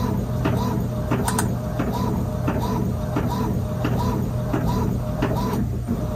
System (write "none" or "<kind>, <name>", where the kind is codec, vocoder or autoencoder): none